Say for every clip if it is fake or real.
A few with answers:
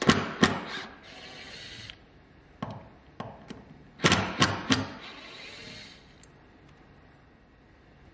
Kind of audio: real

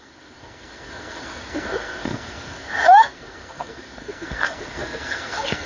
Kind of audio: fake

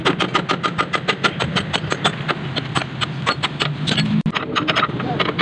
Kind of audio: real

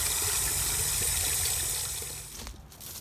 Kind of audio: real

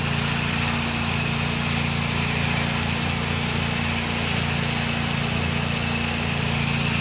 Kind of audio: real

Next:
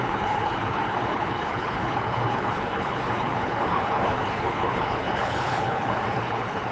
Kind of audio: fake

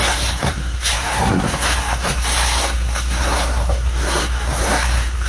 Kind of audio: fake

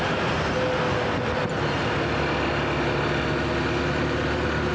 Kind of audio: real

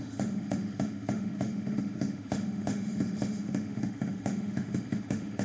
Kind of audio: fake